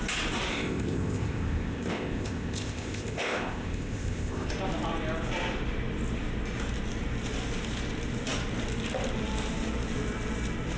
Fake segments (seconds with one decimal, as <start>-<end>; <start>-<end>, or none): 0.5-4.5